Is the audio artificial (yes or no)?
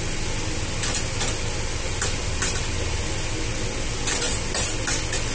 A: no